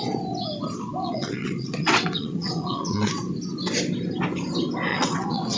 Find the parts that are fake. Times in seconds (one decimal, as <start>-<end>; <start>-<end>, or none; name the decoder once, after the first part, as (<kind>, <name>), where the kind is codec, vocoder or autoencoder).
1.0-3.1 (vocoder, WaveNeXt); 4.9-5.6